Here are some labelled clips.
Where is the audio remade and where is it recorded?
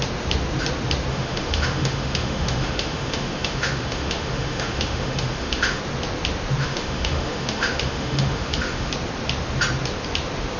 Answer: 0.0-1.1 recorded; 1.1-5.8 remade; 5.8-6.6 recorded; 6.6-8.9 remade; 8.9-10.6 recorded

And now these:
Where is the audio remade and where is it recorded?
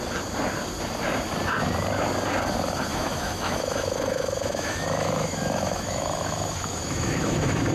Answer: 0.0-2.9 recorded; 2.9-7.7 remade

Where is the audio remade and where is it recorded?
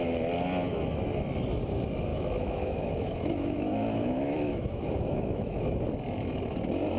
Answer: 0.0-2.1 recorded; 2.1-5.6 remade; 5.6-7.0 recorded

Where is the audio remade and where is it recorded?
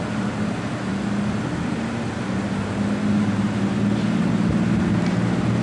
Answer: 0.0-5.6 recorded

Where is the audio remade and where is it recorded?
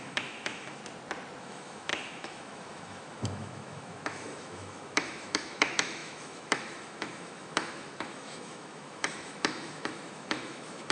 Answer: 0.0-0.8 remade; 0.8-1.4 recorded; 1.4-10.9 remade